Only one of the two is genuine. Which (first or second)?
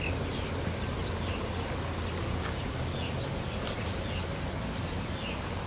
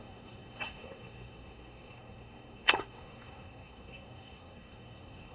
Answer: first